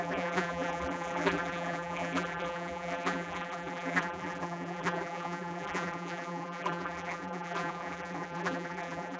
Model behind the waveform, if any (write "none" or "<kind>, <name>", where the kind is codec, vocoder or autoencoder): vocoder, BigVGAN v2